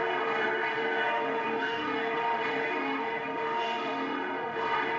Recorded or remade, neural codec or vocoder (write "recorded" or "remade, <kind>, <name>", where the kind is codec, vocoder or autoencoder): remade, autoencoder, DAC-VAE